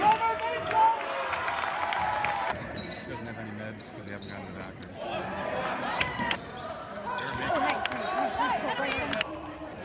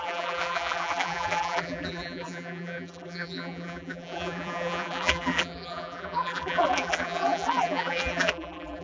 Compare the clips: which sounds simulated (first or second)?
second